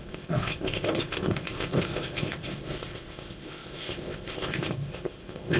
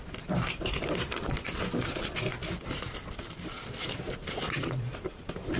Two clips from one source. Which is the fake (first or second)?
first